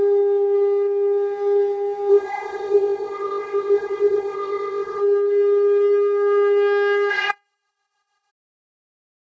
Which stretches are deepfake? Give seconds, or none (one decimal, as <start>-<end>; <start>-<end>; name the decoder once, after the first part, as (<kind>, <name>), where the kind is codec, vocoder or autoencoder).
2.1-5.0 (codec, ZipCodec); 7.1-8.3